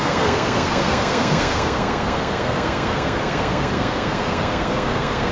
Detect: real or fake fake